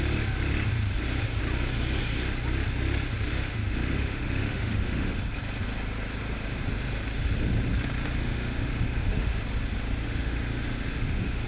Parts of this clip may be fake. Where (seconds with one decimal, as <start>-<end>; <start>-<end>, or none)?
3.3-5.2; 8.2-9.4; 10.0-11.5